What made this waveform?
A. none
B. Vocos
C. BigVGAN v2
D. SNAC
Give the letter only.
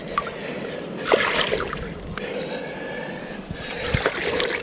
A